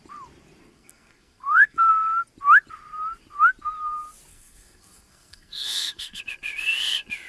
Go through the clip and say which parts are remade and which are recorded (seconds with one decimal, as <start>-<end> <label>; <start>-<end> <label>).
0.0-0.7 recorded; 0.7-1.9 remade; 1.9-4.3 recorded; 4.3-6.2 remade; 6.2-7.3 recorded